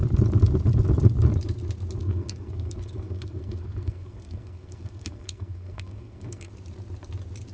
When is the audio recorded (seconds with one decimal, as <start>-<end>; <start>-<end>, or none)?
0.0-2.0; 6.5-7.5